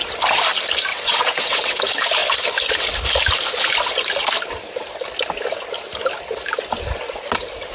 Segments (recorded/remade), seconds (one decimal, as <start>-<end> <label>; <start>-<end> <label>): 0.0-0.9 recorded; 0.9-1.8 remade; 1.8-7.7 recorded